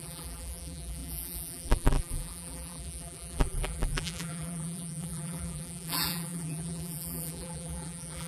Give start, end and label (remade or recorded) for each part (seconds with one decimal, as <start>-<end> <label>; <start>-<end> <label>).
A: 0.0-8.3 remade